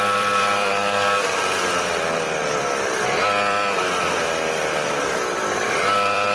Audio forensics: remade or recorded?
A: remade